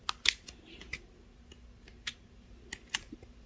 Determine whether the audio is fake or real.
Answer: real